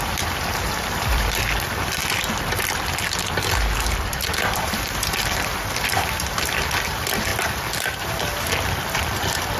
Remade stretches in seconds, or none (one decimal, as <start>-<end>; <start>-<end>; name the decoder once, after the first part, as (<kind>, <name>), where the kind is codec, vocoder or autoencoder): 0.0-2.0 (vocoder, BigVGAN v2); 3.9-9.6